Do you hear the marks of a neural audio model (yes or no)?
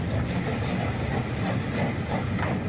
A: no